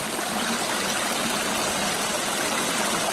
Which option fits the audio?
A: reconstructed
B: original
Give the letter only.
A